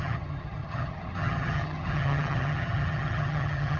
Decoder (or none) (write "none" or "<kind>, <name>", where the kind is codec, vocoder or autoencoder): vocoder, HiFi-GAN